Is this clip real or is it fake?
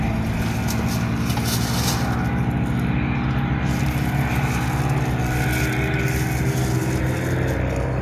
real